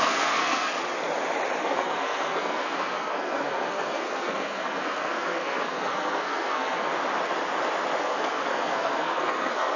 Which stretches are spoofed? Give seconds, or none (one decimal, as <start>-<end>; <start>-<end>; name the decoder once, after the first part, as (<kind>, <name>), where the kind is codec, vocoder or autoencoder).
0.0-0.7 (codec, SNAC); 1.6-6.9; 8.0-9.8